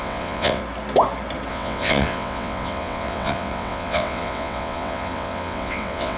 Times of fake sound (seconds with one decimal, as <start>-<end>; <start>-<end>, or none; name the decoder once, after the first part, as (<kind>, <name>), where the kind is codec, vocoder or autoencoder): 0.0-0.6 (vocoder, WaveNeXt); 1.5-6.2